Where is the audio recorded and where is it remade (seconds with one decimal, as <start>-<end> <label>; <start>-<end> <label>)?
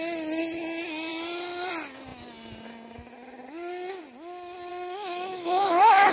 0.0-4.7 recorded; 4.7-6.1 remade